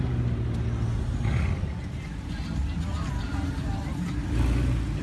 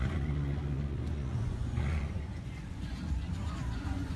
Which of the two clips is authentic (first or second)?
first